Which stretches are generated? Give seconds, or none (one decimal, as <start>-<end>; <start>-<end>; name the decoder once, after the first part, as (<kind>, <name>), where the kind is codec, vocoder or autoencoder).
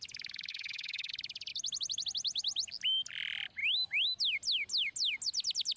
0.5-1.1 (vocoder, HiFi-GAN)